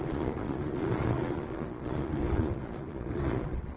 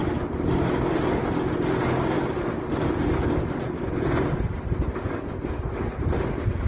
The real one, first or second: second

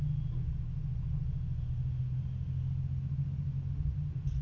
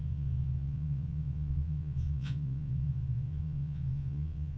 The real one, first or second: first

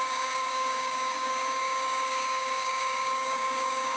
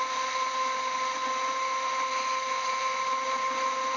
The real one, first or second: second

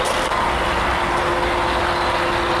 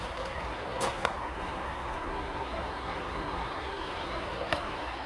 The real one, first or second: first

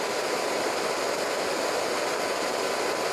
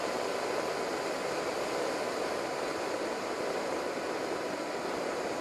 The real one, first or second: first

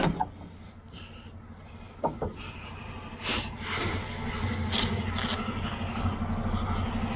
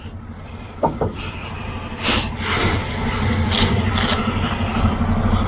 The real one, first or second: first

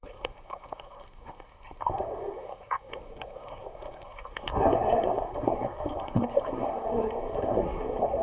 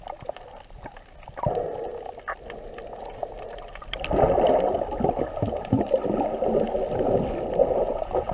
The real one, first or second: second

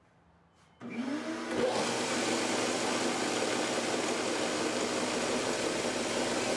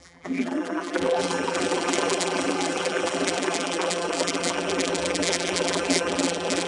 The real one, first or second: first